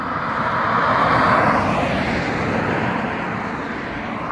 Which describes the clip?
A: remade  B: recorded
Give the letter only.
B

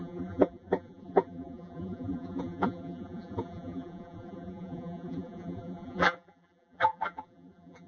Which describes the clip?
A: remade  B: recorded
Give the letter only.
A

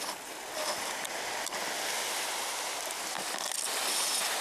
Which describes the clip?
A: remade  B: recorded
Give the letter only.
B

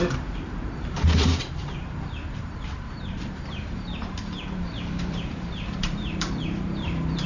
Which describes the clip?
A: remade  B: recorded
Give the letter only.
A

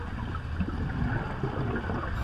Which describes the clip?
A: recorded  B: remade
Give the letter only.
A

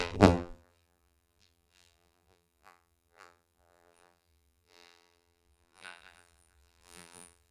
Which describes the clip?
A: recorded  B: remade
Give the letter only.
B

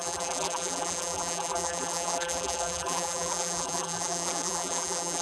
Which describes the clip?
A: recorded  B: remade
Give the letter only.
B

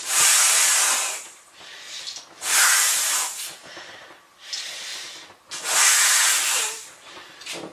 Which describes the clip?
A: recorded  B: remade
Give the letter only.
B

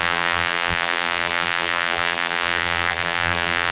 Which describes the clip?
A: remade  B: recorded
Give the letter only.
A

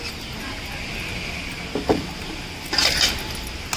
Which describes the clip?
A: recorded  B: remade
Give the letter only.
A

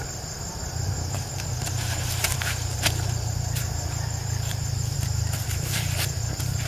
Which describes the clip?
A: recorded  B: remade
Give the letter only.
B